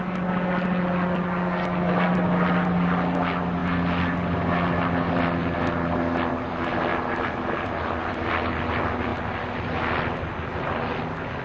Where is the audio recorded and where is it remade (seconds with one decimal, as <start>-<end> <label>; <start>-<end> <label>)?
0.0-11.4 recorded